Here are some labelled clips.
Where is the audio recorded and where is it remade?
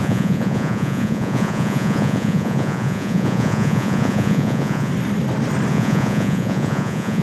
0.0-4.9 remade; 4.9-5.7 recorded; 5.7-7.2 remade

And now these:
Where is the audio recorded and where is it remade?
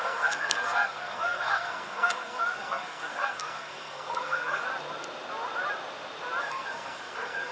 0.0-4.6 remade; 4.6-6.4 recorded; 6.4-7.5 remade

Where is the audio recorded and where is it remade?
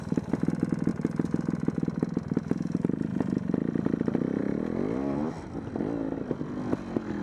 0.0-7.2 recorded